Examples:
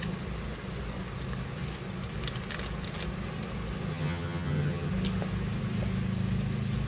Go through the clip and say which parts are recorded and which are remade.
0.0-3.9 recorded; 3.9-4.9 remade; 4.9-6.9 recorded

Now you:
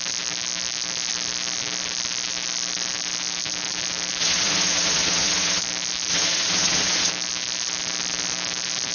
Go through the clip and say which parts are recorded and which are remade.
0.0-4.2 recorded; 4.2-5.6 remade; 5.6-6.1 recorded; 6.1-7.1 remade; 7.1-8.9 recorded

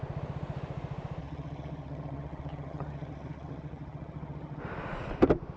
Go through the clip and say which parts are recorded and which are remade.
0.0-1.2 recorded; 1.2-4.6 remade; 4.6-5.6 recorded

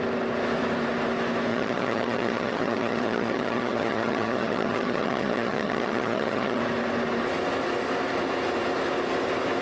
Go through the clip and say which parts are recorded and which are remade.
0.0-1.5 recorded; 1.5-6.6 remade; 6.6-9.6 recorded